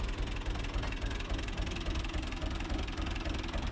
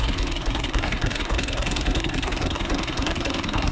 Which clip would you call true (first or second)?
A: first